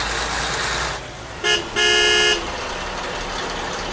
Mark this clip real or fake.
real